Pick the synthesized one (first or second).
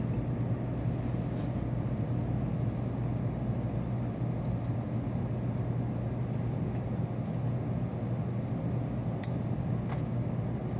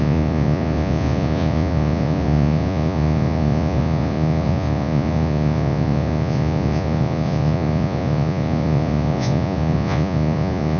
second